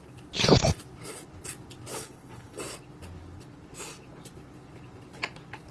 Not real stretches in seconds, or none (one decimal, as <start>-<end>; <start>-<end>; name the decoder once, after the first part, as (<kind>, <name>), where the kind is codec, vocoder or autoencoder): 1.9-2.6 (codec, HILCodec)